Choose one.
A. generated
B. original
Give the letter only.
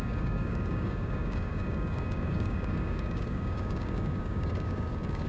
A